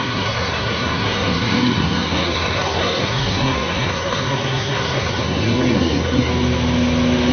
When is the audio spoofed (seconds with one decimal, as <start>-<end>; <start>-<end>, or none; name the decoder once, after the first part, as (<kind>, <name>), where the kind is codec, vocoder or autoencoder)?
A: 0.0-6.3 (codec, SNAC)